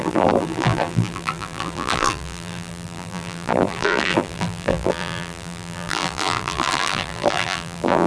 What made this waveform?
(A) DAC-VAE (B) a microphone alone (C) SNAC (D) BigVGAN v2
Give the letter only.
D